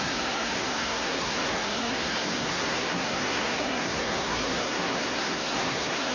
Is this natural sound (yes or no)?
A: no